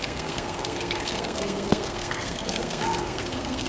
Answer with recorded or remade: remade